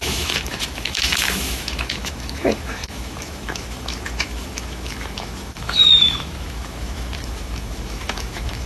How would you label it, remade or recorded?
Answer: remade